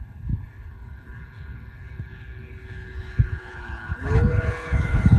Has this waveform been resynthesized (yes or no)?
yes